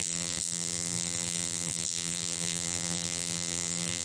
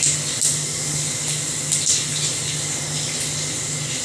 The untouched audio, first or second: second